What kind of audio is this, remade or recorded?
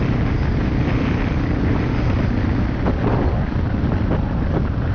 recorded